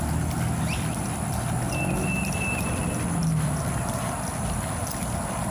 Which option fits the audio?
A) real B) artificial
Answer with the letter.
A